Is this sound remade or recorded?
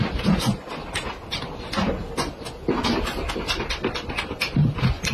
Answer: recorded